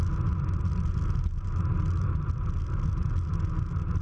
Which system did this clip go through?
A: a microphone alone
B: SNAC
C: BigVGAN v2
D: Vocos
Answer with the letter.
A